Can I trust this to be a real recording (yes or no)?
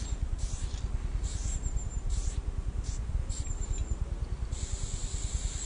yes